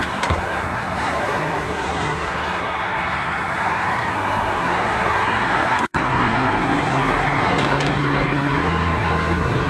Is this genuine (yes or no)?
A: no